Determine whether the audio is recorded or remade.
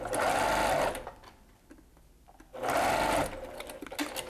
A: recorded